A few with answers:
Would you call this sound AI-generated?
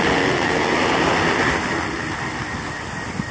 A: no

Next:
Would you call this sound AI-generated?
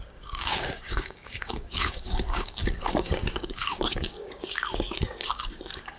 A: yes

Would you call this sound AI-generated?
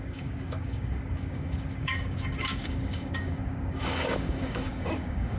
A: yes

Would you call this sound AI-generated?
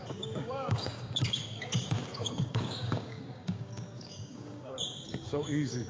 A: yes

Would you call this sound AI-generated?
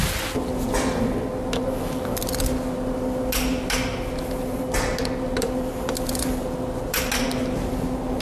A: no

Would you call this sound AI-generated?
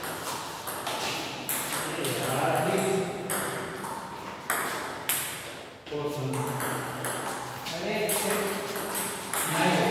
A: no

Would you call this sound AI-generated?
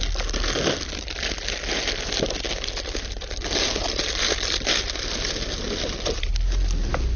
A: no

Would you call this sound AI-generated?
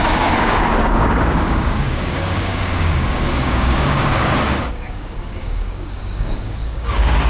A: yes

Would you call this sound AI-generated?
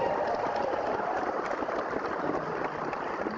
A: no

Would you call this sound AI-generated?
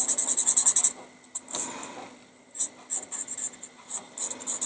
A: no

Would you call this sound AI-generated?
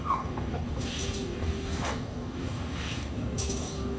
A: yes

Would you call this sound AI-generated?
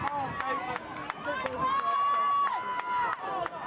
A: no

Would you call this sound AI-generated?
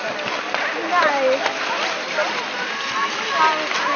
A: no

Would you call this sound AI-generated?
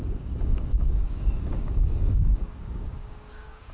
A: yes